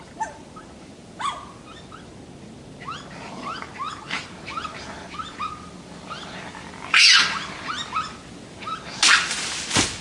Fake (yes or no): no